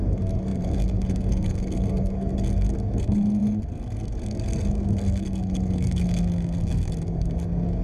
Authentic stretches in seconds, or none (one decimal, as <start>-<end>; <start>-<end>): none